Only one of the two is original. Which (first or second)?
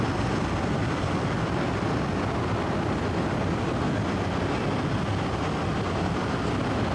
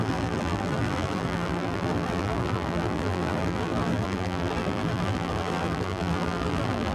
first